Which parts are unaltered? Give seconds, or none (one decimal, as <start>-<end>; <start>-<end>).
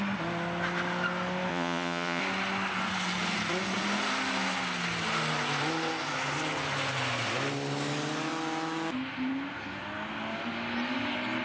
0.0-1.5; 2.2-11.4